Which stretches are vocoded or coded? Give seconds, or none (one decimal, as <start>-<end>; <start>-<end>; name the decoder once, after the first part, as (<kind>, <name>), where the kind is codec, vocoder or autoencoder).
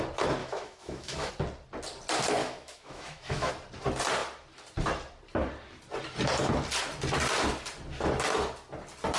0.4-1.3 (autoencoder, DAC-VAE); 2.4-3.5